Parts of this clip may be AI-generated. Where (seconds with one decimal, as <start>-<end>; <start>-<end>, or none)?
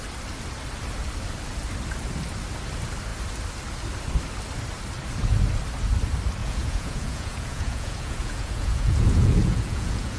6.4-10.2